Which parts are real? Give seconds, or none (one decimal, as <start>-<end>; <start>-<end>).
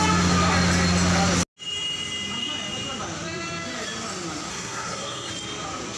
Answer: 0.0-4.5; 5.3-6.0